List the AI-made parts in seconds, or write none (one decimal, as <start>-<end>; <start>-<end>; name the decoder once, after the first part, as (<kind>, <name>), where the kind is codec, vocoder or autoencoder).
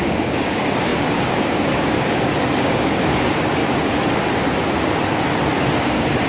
0.0-3.6 (codec, DAC); 5.7-6.3